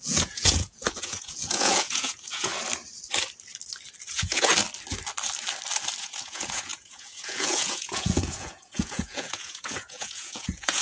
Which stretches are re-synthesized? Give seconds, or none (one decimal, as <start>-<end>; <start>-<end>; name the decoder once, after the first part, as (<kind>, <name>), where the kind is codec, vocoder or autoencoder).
0.0-2.5 (vocoder, Vocos); 4.1-4.5; 6.0-10.8